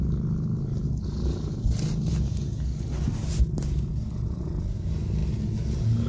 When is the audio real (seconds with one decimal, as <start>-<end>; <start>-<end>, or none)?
0.0-6.1

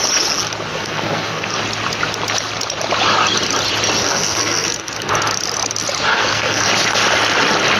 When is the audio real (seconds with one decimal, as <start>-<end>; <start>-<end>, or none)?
0.0-0.7; 1.6-4.0; 5.1-6.1; 6.7-7.8